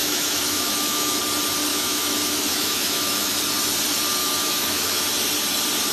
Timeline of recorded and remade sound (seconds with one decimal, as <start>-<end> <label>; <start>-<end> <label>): 0.0-1.2 remade; 1.2-1.7 recorded; 1.7-3.4 remade; 3.4-4.2 recorded; 4.2-5.0 remade; 5.0-5.9 recorded